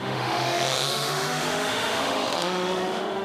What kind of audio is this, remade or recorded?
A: remade